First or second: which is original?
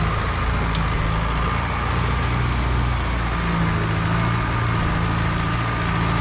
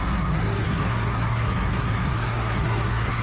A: first